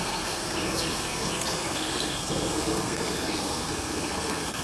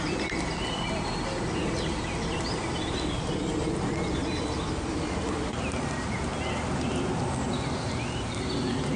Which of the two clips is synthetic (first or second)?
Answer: first